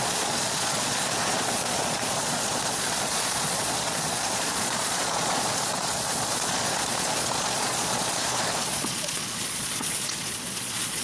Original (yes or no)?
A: no